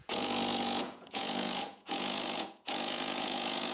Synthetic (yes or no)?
yes